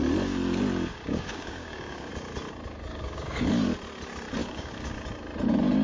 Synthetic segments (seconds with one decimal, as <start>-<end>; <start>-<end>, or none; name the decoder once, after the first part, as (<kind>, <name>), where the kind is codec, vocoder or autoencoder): 0.9-2.1 (codec, DAC); 2.9-3.4; 4.4-4.9